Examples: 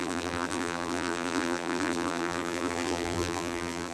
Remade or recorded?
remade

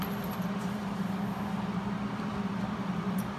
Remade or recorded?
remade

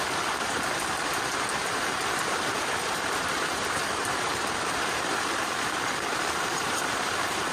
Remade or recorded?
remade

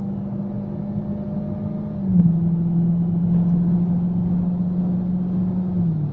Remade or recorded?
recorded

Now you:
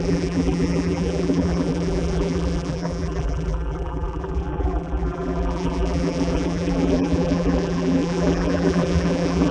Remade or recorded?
remade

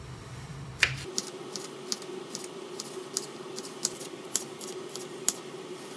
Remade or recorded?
remade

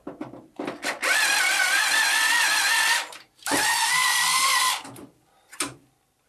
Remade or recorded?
remade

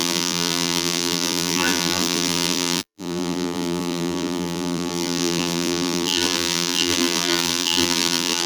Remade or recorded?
remade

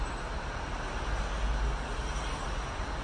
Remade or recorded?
recorded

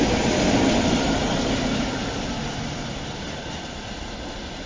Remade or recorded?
remade